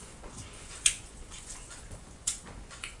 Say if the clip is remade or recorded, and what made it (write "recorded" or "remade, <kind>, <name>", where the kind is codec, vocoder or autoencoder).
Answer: remade, vocoder, Vocos